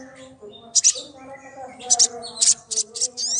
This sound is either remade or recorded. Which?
recorded